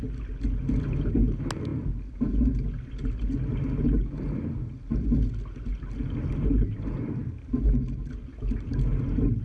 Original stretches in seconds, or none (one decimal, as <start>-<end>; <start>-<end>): 0.0-9.4